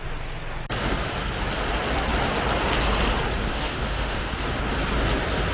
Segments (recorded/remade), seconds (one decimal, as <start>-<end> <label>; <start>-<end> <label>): 0.0-3.5 recorded; 3.5-4.3 remade; 4.3-5.5 recorded